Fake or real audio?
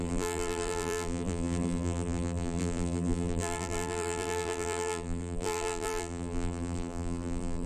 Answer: fake